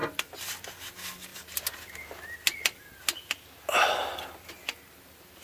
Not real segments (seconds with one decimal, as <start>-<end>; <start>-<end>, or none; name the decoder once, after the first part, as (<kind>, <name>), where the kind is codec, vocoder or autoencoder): none